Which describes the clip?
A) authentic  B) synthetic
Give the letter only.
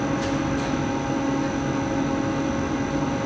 A